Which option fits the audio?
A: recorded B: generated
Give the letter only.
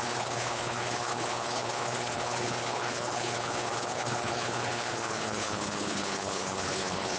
B